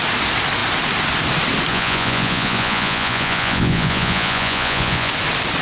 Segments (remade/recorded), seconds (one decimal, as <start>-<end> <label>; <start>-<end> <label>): 0.0-1.7 recorded; 1.7-5.1 remade; 5.1-5.6 recorded